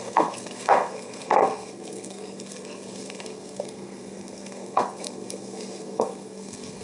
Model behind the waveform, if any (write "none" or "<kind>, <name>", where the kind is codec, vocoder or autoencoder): codec, SNAC